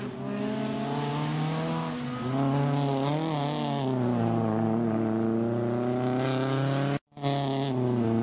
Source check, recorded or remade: recorded